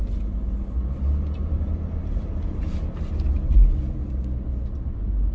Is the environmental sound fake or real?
real